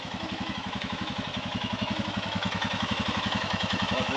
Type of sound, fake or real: fake